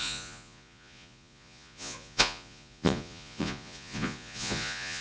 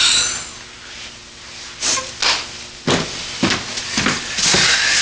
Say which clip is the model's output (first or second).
first